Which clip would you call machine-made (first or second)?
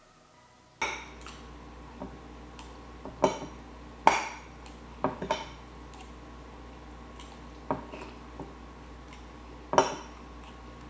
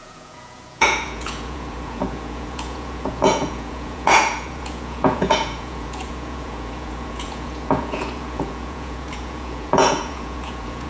second